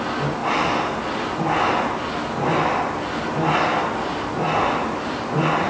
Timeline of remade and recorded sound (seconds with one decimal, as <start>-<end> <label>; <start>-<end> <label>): 0.0-5.7 recorded

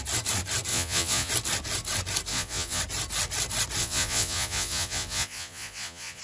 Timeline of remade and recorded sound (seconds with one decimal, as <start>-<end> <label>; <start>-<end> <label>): 0.0-0.7 recorded; 0.7-1.3 remade; 1.3-2.3 recorded; 2.3-2.8 remade; 2.8-3.8 recorded; 3.8-6.2 remade

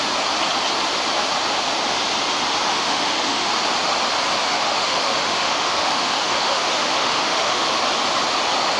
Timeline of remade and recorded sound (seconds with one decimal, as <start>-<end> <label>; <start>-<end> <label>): 0.0-2.7 recorded; 2.7-3.5 remade; 3.5-4.5 recorded; 4.5-7.8 remade; 7.8-8.8 recorded

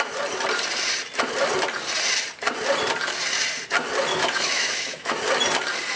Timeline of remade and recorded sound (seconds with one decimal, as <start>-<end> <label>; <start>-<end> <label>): 0.0-4.1 recorded; 4.1-5.1 remade; 5.1-6.0 recorded

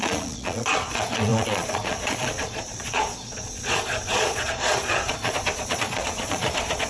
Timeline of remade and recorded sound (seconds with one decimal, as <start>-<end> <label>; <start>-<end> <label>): 0.0-6.9 remade